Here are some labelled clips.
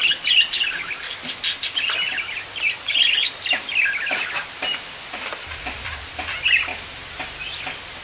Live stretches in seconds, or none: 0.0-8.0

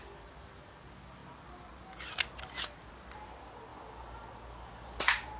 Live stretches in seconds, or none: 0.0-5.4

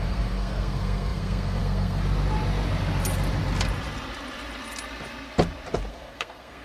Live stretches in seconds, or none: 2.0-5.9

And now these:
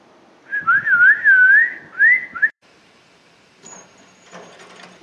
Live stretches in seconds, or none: 0.0-1.6; 4.6-5.0